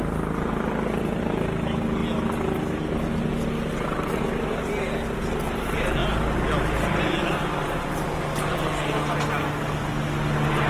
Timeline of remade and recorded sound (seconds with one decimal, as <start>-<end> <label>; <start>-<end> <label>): 0.0-10.7 recorded